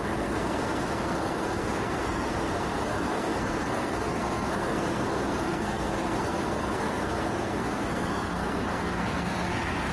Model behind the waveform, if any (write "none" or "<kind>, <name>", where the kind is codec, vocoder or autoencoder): codec, SNAC